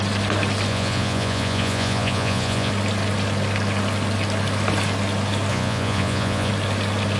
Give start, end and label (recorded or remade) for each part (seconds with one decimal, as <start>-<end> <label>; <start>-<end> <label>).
0.0-0.7 recorded; 0.7-2.7 remade; 2.7-5.5 recorded; 5.5-6.5 remade; 6.5-7.2 recorded